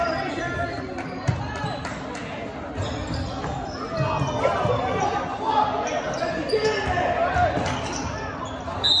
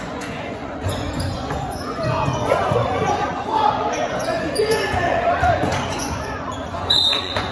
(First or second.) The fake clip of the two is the second